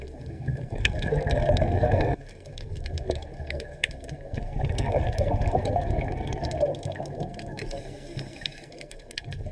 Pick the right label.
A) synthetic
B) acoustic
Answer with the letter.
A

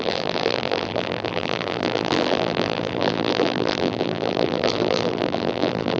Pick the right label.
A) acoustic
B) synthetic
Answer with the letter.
B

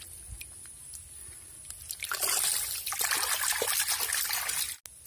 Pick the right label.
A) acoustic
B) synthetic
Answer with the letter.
A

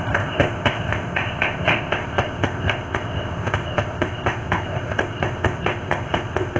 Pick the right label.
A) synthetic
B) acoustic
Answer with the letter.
A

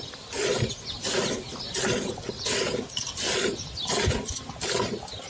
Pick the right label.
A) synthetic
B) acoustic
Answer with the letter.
B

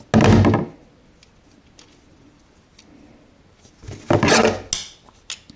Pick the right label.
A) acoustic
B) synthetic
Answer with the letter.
A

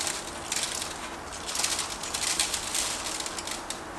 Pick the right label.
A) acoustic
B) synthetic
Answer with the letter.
A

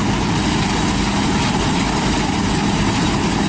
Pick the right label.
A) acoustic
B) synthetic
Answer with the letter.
A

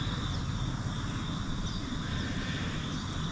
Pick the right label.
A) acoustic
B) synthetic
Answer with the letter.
A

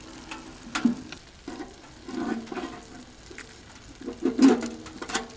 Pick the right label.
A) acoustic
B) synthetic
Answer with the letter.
A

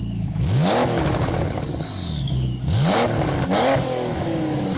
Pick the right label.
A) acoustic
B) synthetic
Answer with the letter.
B